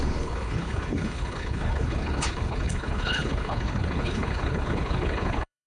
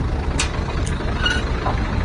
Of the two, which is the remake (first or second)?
first